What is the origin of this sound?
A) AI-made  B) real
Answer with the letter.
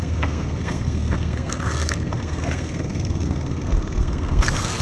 A